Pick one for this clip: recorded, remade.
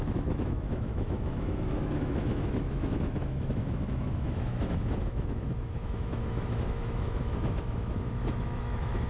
remade